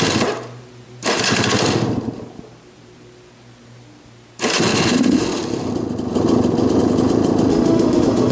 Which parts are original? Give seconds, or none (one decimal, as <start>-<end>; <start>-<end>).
0.0-7.5